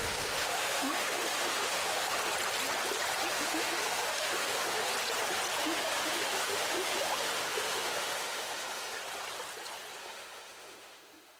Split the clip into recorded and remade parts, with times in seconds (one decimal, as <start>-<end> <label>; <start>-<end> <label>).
0.0-2.2 remade; 2.2-3.3 recorded; 3.3-4.9 remade; 4.9-5.6 recorded; 5.6-9.0 remade; 9.0-10.0 recorded; 10.0-11.4 remade